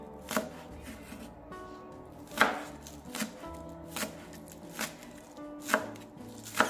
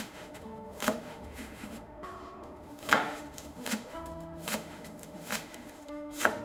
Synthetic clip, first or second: second